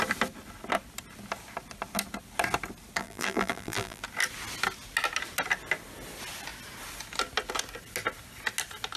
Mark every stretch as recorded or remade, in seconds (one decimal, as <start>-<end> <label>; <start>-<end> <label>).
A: 0.0-3.0 recorded; 3.0-4.0 remade; 4.0-9.0 recorded